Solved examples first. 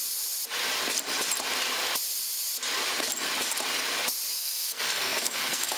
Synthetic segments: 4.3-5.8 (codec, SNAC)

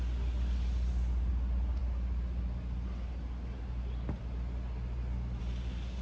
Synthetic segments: none

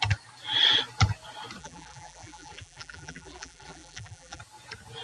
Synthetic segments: 1.6-4.4 (vocoder, BigVGAN v2)